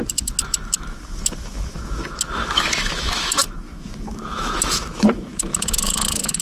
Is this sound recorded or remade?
remade